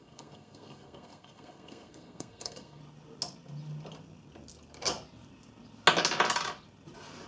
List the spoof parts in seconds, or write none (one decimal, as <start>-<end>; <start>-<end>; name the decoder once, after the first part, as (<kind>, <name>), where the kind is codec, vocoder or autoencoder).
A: 0.0-2.8 (codec, SNAC)